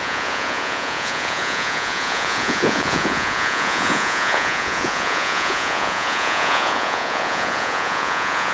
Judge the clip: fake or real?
fake